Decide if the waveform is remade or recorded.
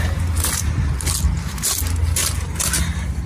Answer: recorded